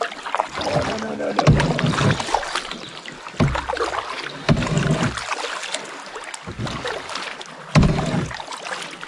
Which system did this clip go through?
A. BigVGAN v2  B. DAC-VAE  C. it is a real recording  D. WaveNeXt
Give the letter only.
C